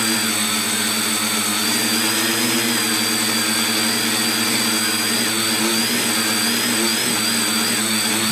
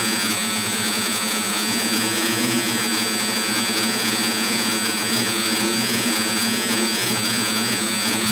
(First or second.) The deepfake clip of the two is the second